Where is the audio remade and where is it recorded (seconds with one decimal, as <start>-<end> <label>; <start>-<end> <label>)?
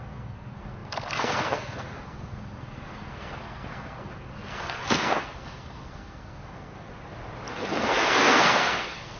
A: 0.0-6.9 remade; 6.9-7.5 recorded; 7.5-9.2 remade